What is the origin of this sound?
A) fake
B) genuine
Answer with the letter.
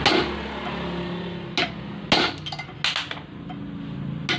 B